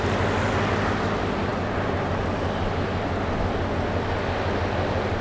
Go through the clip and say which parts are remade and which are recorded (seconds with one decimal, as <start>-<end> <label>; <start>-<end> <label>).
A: 0.0-5.2 recorded